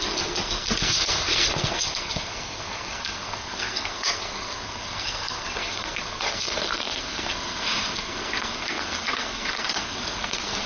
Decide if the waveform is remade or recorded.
remade